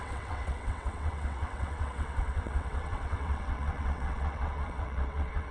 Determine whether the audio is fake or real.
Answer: fake